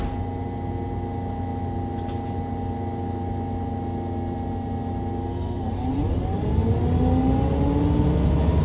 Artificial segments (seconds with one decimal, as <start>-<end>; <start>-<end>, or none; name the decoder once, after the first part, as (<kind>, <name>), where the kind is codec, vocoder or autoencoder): none

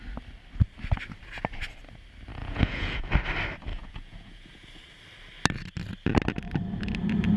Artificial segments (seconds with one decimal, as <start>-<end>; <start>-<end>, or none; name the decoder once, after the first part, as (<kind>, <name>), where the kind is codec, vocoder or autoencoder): 2.4-3.1 (vocoder, Vocos); 3.7-4.7

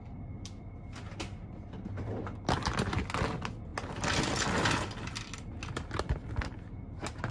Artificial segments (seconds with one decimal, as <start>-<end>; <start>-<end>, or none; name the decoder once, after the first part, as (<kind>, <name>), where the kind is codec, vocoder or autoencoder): none

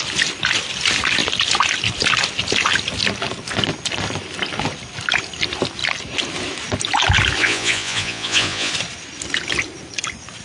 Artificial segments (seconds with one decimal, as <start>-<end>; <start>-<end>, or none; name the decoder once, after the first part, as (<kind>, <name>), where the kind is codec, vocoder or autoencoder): 7.4-8.7 (vocoder, Vocos)

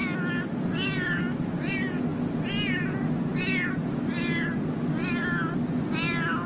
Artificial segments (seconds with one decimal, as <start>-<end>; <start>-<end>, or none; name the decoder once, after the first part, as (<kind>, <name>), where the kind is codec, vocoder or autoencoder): none